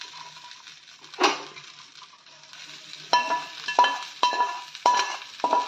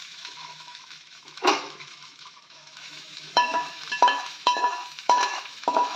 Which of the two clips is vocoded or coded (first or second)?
second